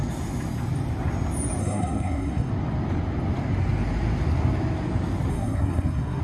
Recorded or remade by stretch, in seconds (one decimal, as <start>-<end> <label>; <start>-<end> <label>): 0.0-1.6 recorded; 1.6-2.5 remade; 2.5-5.3 recorded; 5.3-6.2 remade